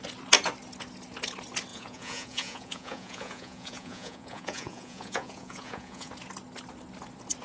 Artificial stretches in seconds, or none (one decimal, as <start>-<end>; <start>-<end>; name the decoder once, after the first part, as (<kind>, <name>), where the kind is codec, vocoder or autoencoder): 1.7-6.1 (vocoder, Vocos)